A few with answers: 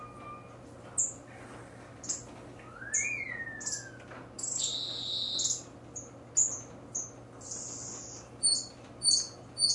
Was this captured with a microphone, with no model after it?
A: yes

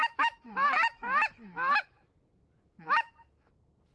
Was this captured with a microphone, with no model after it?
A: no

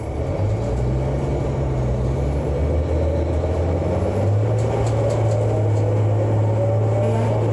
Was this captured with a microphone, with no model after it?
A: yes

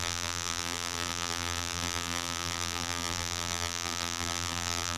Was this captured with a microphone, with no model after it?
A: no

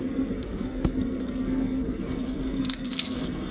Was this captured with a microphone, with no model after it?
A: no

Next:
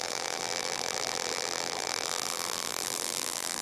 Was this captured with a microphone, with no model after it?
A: no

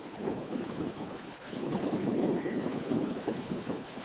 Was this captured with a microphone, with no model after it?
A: no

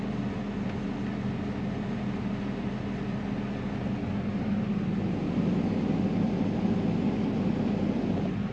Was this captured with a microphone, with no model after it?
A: yes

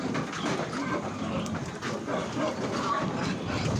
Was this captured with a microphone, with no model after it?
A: yes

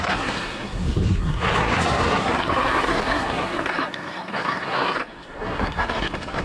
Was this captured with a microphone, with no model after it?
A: no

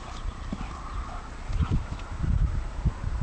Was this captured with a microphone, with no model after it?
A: yes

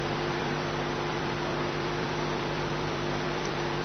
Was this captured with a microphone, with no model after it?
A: no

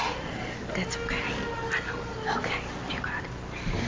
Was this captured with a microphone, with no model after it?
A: yes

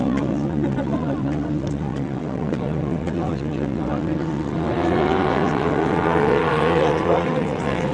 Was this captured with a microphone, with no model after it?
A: no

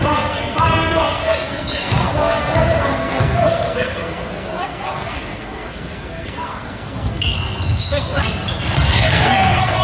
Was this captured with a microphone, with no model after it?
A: no